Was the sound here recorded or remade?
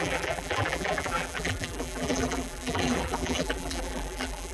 remade